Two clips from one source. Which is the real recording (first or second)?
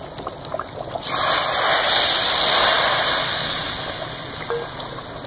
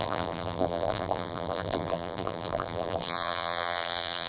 first